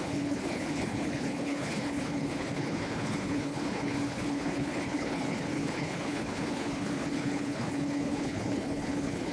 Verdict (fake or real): fake